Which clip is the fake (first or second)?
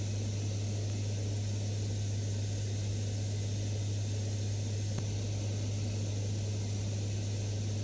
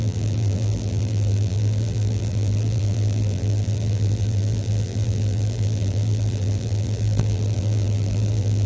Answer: second